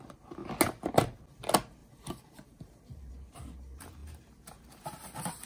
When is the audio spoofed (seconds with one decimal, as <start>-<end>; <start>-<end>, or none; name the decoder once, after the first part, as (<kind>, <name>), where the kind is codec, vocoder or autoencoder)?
1.8-3.1 (vocoder, BigVGAN v2)